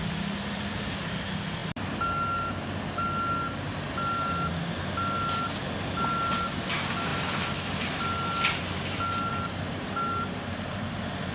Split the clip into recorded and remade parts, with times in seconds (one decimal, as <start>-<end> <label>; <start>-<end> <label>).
0.0-11.3 recorded